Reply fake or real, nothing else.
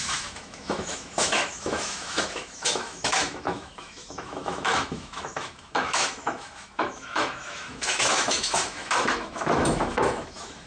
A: fake